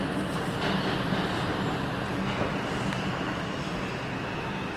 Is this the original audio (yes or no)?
yes